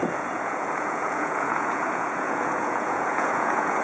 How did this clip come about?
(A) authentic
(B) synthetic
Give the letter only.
B